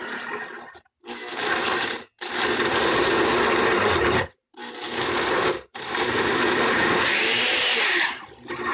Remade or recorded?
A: remade